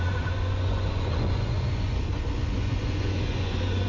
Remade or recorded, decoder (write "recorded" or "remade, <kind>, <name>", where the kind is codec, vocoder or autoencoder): remade, vocoder, Vocos